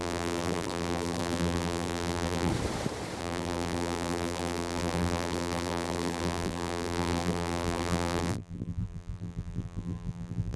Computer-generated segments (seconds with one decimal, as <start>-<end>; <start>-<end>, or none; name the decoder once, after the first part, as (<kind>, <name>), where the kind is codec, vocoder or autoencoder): 0.0-2.5 (vocoder, BigVGAN v2); 3.2-10.6